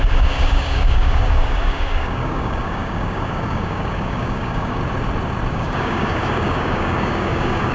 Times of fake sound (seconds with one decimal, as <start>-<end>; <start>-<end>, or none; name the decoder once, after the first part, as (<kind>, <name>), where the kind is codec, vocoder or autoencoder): 0.0-4.8 (codec, DAC); 5.5-7.7